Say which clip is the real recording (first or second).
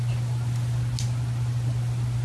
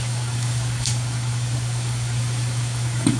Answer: first